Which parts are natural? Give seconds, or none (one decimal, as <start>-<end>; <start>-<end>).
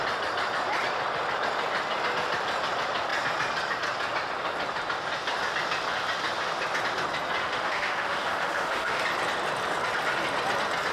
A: 0.0-7.4; 9.0-10.9